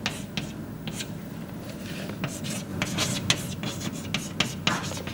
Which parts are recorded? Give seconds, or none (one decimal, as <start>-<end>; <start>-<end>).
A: 0.0-1.2; 1.8-5.1